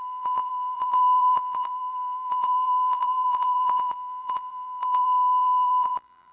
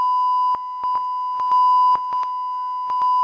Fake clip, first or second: first